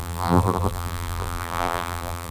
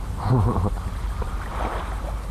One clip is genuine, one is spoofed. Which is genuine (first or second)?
second